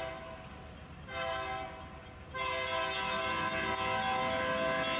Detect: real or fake real